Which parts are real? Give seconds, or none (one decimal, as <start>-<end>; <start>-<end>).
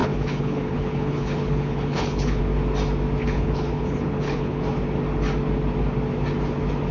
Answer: 2.4-3.2; 4.6-6.9